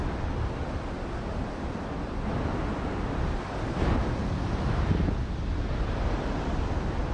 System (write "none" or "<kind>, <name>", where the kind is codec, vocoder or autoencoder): none